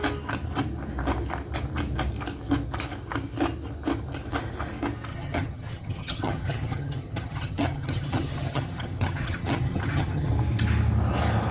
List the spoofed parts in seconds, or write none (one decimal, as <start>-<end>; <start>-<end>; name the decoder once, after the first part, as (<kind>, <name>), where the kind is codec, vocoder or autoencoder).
5.1-10.3 (vocoder, HiFi-GAN)